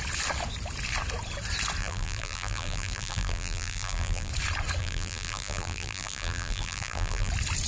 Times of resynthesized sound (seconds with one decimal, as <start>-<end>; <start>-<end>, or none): 1.8-4.3; 4.8-7.3